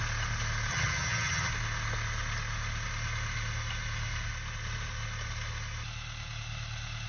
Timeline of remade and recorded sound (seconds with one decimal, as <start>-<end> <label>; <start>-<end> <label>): 0.0-0.7 recorded; 0.7-1.5 remade; 1.5-7.1 recorded